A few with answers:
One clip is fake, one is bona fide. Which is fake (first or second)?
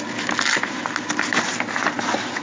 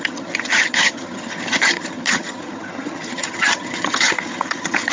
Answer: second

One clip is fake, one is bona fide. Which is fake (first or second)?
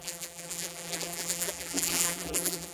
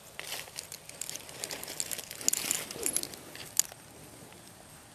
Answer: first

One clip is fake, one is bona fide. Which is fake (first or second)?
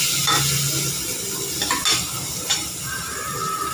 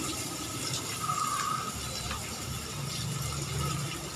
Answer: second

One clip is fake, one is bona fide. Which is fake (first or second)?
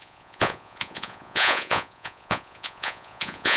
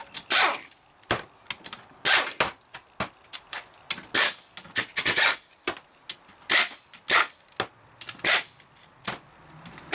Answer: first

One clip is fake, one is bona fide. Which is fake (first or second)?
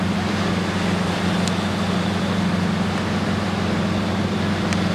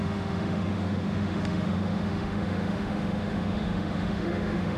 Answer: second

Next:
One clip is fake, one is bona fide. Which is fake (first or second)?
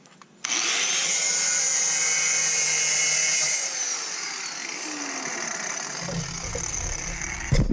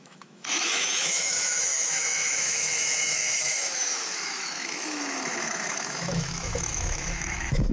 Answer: second